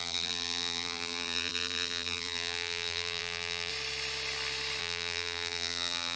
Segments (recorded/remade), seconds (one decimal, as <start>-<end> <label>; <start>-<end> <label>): 0.0-3.7 remade; 3.7-4.8 recorded; 4.8-6.2 remade